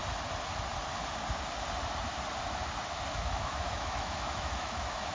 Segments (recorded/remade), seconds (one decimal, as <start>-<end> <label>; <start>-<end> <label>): 0.0-3.1 recorded; 3.1-5.1 remade